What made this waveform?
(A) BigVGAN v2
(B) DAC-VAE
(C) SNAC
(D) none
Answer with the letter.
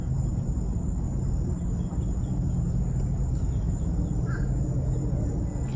D